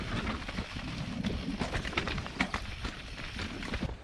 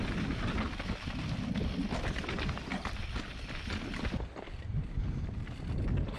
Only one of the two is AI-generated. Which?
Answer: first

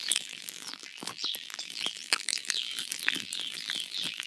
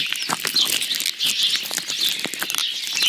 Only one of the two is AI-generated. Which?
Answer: first